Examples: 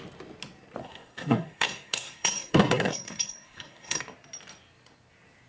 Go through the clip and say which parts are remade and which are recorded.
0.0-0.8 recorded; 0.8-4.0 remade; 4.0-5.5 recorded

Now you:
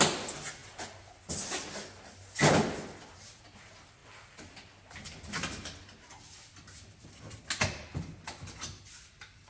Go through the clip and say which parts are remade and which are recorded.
0.0-9.5 recorded